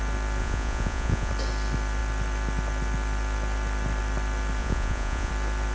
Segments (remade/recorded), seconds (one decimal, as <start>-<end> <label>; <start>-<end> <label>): 0.0-0.4 recorded; 0.4-1.3 remade; 1.3-4.6 recorded; 4.6-5.3 remade; 5.3-5.7 recorded